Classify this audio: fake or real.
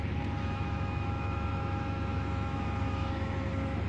fake